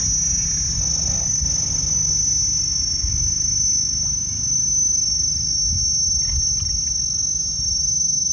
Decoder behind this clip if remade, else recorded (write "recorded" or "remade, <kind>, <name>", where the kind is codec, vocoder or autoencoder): recorded